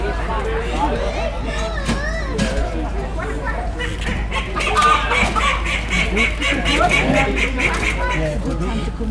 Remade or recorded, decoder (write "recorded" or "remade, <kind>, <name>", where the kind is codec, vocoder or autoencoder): recorded